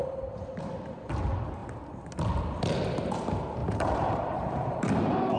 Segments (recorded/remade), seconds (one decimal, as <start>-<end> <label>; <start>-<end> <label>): 0.0-0.7 remade; 0.7-3.6 recorded; 3.6-4.9 remade; 4.9-5.4 recorded